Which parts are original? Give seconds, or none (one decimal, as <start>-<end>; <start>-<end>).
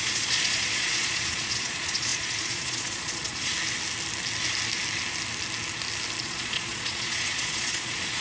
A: 3.5-6.2